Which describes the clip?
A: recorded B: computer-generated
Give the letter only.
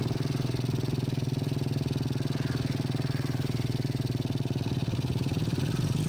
A